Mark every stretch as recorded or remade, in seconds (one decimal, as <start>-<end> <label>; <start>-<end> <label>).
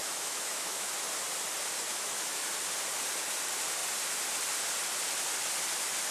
0.0-0.9 remade; 0.9-1.9 recorded; 1.9-2.5 remade; 2.5-6.1 recorded